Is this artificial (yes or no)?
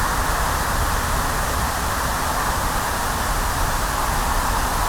no